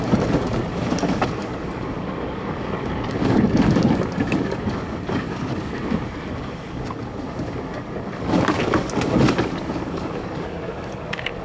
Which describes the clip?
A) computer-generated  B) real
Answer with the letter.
A